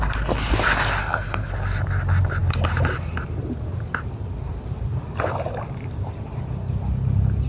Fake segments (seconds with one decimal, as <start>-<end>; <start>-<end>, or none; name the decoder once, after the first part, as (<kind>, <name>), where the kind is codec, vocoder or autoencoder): 1.0-1.5 (codec, SNAC)